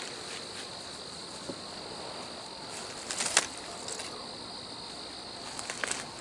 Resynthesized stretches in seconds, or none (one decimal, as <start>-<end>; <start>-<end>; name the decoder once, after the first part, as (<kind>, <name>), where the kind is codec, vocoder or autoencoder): none